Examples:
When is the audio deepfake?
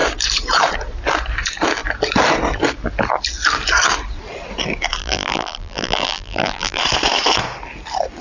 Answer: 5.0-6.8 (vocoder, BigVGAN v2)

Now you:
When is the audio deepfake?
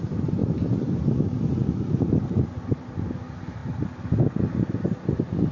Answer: none